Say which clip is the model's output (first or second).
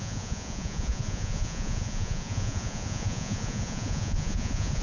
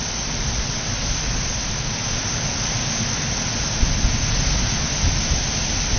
first